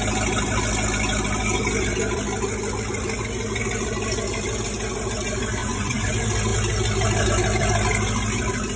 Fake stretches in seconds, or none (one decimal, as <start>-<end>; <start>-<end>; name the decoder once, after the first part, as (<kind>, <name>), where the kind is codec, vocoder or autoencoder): 5.6-6.1 (vocoder, Vocos)